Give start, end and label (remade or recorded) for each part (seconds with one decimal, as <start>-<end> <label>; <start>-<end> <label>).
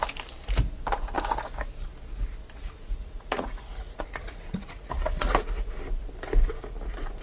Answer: 0.0-2.6 recorded; 2.6-5.3 remade; 5.3-7.2 recorded